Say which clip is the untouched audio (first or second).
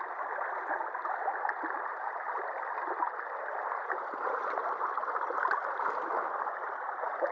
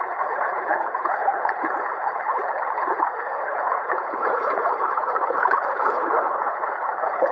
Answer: first